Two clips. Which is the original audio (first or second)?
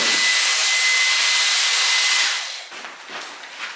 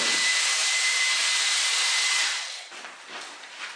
first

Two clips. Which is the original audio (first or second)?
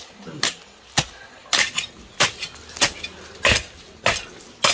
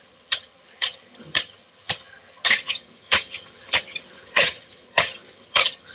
first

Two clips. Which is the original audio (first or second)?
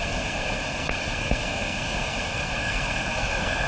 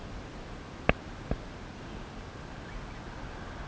second